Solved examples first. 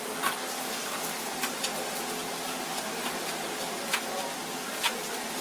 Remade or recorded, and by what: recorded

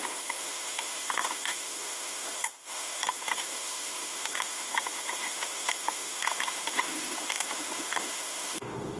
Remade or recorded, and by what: remade, autoencoder, DAC-VAE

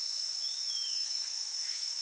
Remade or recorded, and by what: remade, autoencoder, DAC-VAE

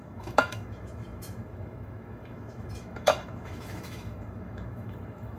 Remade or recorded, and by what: remade, autoencoder, DAC-VAE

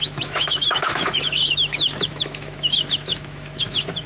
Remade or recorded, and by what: remade, autoencoder, DAC-VAE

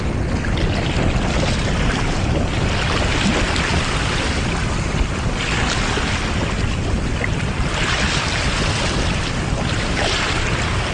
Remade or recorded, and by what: recorded